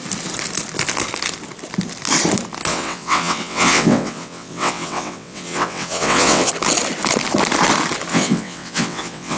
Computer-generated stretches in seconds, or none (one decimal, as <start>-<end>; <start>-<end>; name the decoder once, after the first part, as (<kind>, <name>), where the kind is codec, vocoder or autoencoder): 2.7-6.5 (vocoder, WaveNeXt); 8.1-9.4